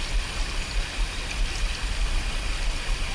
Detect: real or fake real